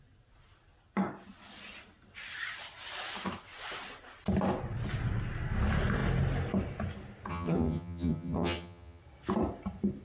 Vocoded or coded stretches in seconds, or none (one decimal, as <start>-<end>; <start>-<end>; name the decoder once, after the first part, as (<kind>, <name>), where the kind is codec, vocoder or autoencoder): 7.3-9.0 (vocoder, HiFi-GAN)